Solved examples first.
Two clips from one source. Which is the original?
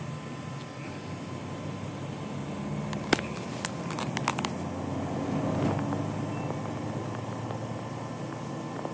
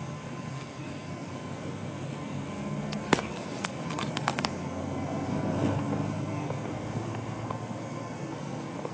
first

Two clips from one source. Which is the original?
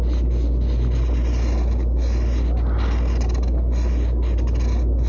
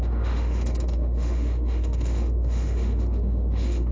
first